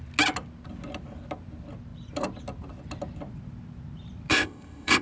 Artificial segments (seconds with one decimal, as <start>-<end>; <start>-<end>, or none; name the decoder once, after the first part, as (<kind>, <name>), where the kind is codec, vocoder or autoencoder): 4.3-5.0 (codec, ZipCodec)